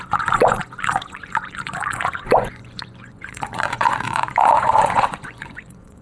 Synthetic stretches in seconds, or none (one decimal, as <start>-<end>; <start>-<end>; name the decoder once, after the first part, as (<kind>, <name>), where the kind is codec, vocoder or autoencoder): 0.0-6.0 (vocoder, Vocos)